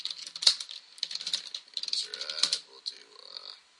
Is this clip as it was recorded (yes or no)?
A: yes